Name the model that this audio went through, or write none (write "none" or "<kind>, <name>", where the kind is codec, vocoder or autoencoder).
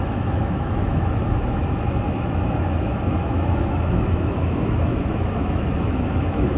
autoencoder, DAC-VAE